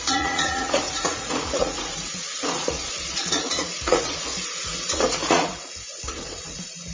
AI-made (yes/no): yes